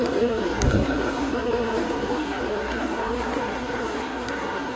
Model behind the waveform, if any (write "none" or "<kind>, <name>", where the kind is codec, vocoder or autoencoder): codec, SNAC